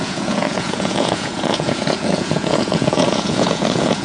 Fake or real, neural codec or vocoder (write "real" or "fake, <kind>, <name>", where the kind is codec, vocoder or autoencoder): fake, vocoder, Vocos